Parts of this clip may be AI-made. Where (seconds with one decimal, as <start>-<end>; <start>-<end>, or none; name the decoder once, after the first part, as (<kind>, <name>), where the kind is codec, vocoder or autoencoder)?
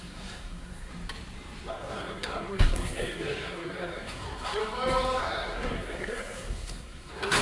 0.0-0.9 (codec, SNAC); 1.7-4.6; 5.2-7.4